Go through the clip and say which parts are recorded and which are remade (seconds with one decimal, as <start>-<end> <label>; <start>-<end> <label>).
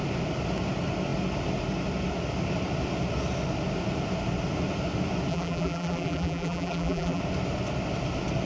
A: 0.0-5.3 recorded; 5.3-7.2 remade; 7.2-8.5 recorded